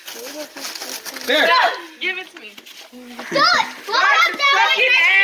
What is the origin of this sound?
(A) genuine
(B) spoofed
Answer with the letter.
A